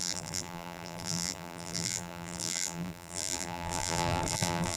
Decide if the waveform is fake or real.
fake